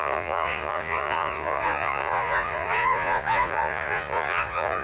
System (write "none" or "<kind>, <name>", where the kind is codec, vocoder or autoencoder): vocoder, Vocos